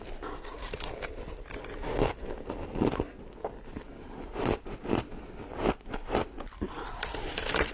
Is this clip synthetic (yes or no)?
no